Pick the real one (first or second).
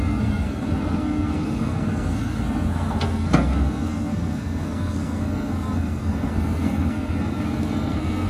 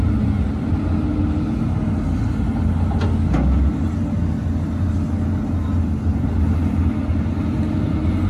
second